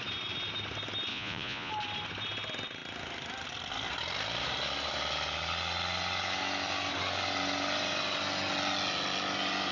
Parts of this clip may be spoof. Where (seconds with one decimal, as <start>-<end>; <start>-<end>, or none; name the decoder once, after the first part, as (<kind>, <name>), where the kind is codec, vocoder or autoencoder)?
1.1-1.7 (vocoder, Vocos)